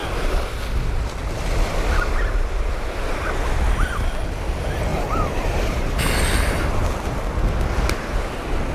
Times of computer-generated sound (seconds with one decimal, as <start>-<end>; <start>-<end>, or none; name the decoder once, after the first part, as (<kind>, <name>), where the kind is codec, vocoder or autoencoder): 4.9-5.9 (vocoder, BigVGAN v2)